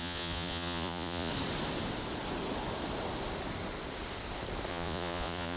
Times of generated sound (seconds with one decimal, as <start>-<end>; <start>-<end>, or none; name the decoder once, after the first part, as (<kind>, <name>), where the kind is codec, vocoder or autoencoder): 0.0-1.3 (vocoder, Vocos); 4.7-5.6